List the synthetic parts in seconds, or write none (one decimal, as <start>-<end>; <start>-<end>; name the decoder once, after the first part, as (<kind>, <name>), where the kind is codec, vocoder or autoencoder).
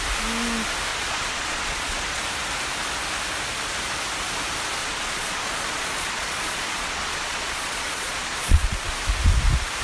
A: 0.9-2.2 (vocoder, Vocos); 4.8-8.9